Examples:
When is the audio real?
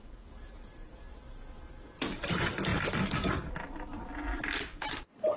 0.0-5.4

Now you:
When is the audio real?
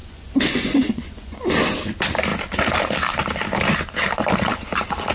1.5-5.1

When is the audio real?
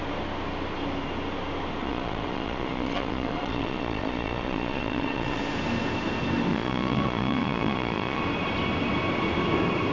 0.0-1.8; 5.4-6.5; 8.2-9.9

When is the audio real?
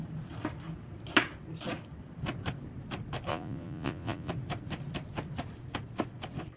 0.0-3.3; 4.3-6.6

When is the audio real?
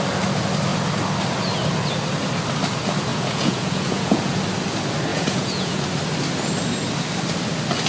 0.0-3.1; 4.4-5.1; 5.8-7.9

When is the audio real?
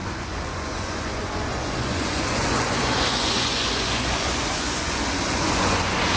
none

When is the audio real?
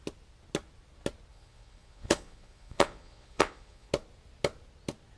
0.0-1.3; 3.9-5.2